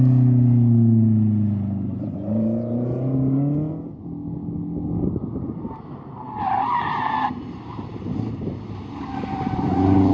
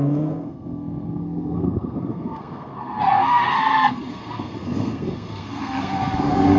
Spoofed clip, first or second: second